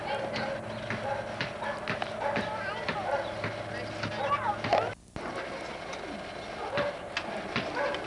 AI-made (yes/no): no